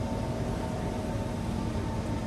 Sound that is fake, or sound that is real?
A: real